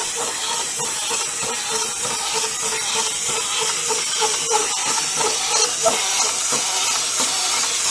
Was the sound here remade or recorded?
recorded